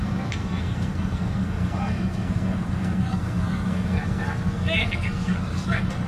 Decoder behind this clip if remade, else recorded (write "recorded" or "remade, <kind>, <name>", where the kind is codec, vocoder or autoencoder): remade, codec, SNAC